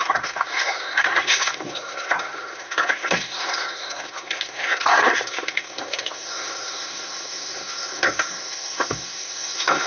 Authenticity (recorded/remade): remade